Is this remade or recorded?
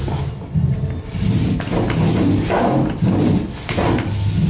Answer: recorded